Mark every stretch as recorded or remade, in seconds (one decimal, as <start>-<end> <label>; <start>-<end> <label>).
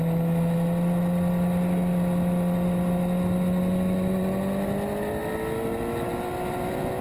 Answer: 0.0-7.0 recorded